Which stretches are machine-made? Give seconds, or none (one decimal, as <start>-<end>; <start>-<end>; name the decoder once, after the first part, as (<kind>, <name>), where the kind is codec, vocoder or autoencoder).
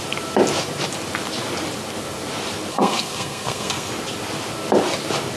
2.7-3.9 (codec, SNAC)